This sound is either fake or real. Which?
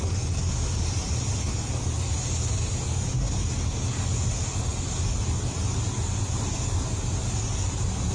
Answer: real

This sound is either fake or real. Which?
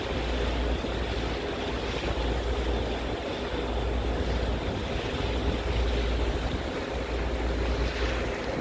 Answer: real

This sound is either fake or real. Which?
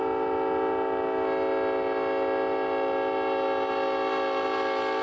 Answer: real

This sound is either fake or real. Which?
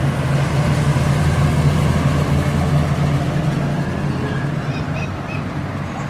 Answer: real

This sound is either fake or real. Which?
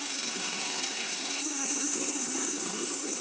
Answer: fake